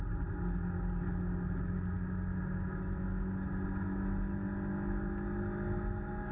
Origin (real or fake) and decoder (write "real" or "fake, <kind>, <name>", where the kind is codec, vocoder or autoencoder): real